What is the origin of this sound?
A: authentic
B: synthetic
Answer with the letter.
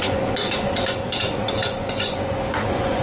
B